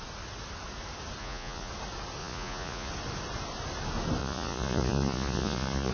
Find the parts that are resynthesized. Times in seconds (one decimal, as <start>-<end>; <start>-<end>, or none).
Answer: 1.2-1.7; 2.2-2.9; 4.2-5.9